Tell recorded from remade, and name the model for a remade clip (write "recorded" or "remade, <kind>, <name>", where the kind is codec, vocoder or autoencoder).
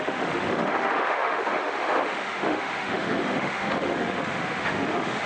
remade, autoencoder, DAC-VAE